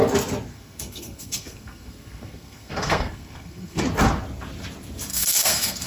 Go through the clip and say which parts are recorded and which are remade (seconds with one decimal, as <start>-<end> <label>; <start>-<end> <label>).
0.0-0.5 recorded; 0.5-3.8 remade; 3.8-5.1 recorded; 5.1-5.9 remade